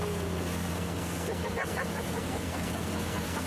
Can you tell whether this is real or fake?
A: fake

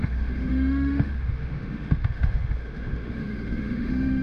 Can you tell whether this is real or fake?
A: fake